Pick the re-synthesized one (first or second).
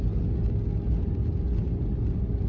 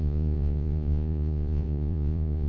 second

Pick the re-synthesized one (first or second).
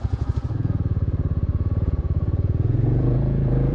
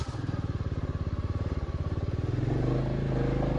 first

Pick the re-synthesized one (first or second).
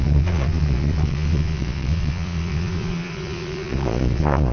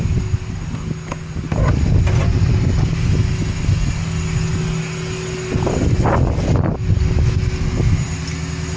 first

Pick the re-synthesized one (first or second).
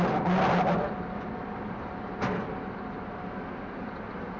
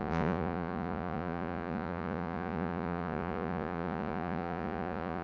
second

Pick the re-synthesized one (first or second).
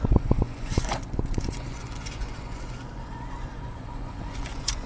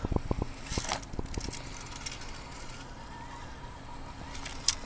first